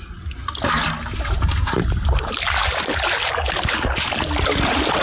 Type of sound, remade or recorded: recorded